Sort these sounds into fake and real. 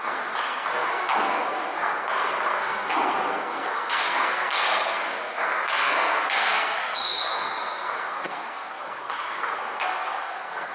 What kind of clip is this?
fake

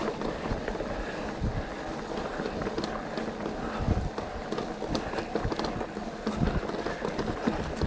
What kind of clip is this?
real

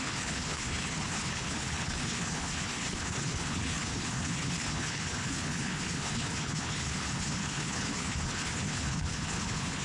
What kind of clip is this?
fake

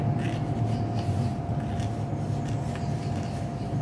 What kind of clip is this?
real